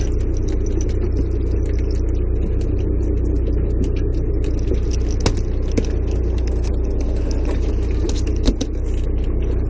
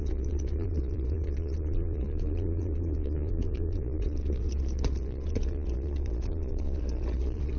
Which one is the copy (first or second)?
second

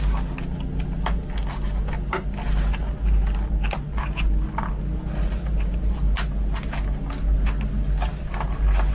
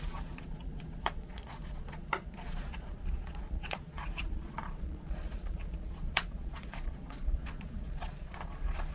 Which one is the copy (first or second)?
second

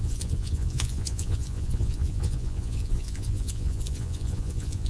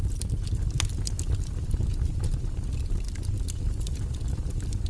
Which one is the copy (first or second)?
first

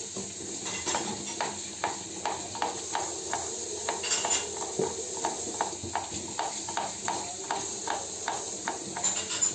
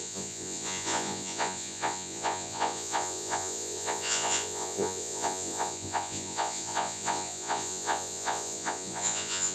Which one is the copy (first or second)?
second